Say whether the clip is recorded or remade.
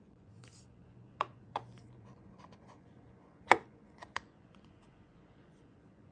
remade